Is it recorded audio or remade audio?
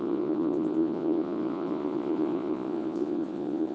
remade